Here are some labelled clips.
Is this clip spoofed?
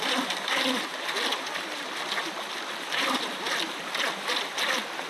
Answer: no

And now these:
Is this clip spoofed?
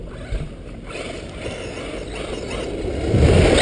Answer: no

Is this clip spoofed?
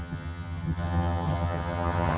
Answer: yes